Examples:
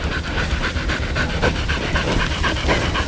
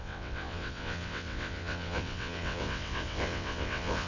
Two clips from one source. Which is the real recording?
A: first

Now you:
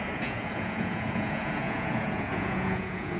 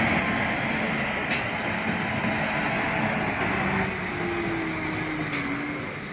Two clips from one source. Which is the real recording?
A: second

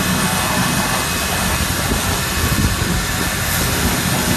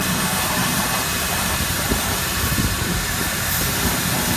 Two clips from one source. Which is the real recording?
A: first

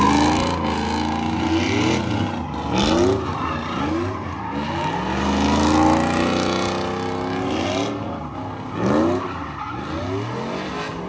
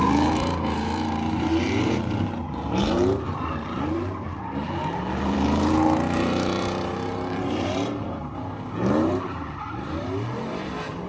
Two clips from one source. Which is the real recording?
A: first